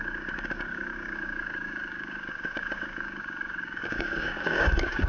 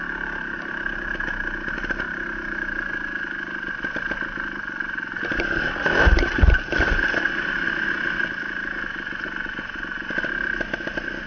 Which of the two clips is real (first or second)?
second